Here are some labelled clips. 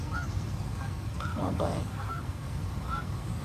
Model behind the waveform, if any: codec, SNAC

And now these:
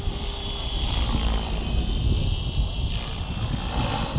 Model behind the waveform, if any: none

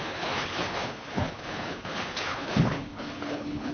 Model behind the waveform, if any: codec, HILCodec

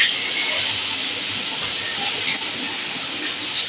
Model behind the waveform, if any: none